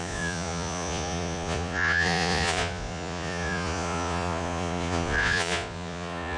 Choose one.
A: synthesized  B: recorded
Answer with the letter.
A